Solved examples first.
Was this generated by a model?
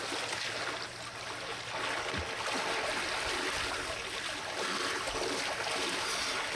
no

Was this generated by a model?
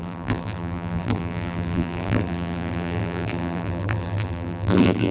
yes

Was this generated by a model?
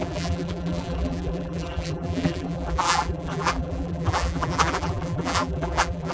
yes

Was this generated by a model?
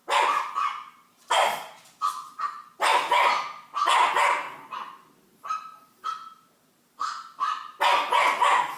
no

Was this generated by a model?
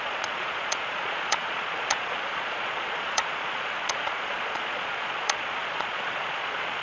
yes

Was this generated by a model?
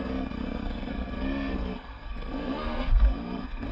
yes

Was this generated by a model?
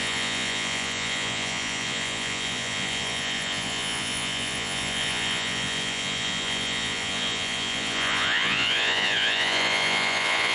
yes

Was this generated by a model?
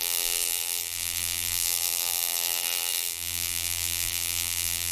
yes